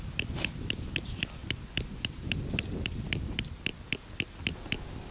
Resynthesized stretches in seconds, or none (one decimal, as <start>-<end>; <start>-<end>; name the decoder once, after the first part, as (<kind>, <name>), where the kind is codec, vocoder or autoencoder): none